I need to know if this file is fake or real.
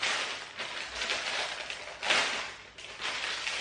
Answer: real